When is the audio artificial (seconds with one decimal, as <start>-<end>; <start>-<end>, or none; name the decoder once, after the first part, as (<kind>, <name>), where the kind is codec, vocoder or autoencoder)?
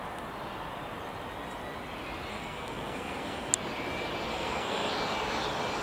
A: 2.3-3.5 (codec, SNAC); 4.3-4.9